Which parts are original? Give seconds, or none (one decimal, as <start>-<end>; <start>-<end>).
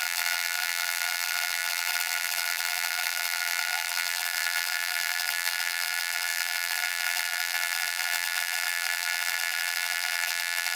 none